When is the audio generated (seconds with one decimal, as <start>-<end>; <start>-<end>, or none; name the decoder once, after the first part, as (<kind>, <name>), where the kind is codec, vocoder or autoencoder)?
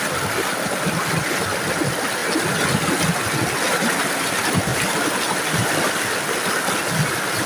none